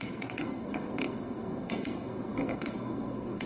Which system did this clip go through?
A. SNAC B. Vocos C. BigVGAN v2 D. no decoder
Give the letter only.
A